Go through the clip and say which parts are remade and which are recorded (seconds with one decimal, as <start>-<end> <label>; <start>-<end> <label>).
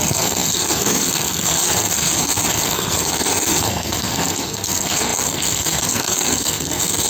0.0-7.1 remade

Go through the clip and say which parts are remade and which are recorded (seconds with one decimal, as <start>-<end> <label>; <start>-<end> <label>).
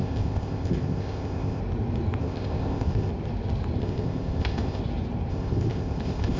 0.0-1.6 remade; 1.6-2.2 recorded; 2.2-3.1 remade; 3.1-3.8 recorded; 3.8-4.8 remade; 4.8-5.3 recorded; 5.3-6.4 remade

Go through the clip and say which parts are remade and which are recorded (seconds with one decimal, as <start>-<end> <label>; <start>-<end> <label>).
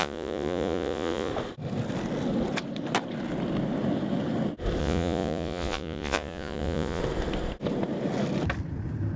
0.0-1.3 remade; 1.3-4.8 recorded; 4.8-7.0 remade; 7.0-9.2 recorded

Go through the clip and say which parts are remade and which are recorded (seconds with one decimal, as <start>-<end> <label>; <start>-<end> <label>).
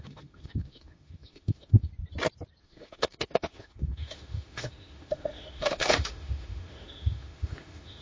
0.0-1.9 remade; 1.9-2.6 recorded; 2.6-8.0 remade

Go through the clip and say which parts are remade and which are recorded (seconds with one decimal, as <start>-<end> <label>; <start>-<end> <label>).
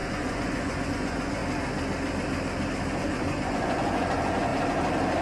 0.0-1.4 remade; 1.4-3.0 recorded; 3.0-4.5 remade; 4.5-5.2 recorded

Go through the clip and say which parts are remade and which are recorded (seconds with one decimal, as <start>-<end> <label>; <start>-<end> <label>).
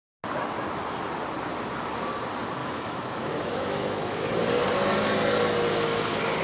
0.0-2.6 recorded; 2.6-4.3 remade; 4.3-6.4 recorded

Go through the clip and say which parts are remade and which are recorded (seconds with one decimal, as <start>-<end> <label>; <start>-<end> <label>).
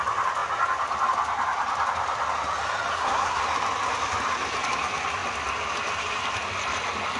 0.0-2.9 recorded; 2.9-3.4 remade; 3.4-7.2 recorded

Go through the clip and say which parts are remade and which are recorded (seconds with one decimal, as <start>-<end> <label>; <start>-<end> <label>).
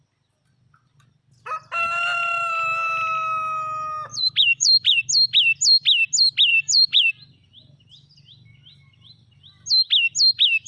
0.0-4.1 recorded; 4.1-5.0 remade; 5.0-6.5 recorded; 6.5-7.1 remade; 7.1-10.7 recorded